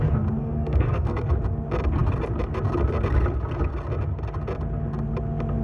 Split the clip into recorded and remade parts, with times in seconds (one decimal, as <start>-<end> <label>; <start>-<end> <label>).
0.0-0.4 recorded; 0.4-1.3 remade; 1.3-5.6 recorded

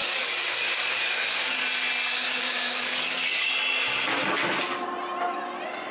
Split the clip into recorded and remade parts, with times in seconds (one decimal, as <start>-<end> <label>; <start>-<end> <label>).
0.0-3.5 remade; 3.5-5.9 recorded

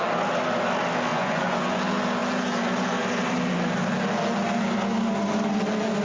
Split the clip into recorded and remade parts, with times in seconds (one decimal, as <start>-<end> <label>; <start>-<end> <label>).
0.0-1.1 recorded; 1.1-1.8 remade; 1.8-6.0 recorded

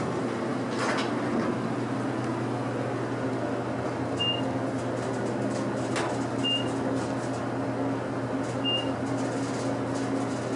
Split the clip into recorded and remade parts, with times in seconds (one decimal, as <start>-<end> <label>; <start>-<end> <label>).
0.0-10.6 recorded

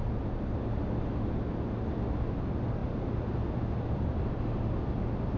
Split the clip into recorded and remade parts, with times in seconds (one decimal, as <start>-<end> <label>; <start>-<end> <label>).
0.0-5.4 recorded

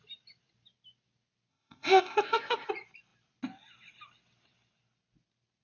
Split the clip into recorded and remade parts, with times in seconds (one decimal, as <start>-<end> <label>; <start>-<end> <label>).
0.0-1.5 recorded; 1.5-2.7 remade; 2.7-5.6 recorded

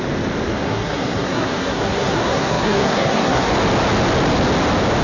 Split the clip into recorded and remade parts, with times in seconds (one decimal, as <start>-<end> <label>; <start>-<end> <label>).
0.0-0.5 recorded; 0.5-3.5 remade; 3.5-5.0 recorded

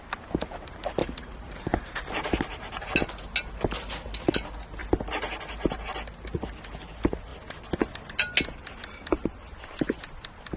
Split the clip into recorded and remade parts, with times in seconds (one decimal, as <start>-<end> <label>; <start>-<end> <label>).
0.0-1.0 recorded; 1.0-1.6 remade; 1.6-10.6 recorded